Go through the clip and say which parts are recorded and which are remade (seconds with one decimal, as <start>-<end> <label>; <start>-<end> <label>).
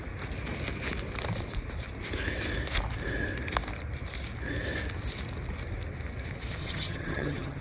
0.0-6.6 recorded; 6.6-7.6 remade